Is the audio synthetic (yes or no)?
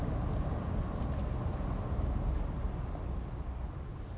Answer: no